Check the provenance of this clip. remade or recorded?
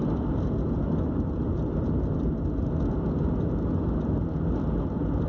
recorded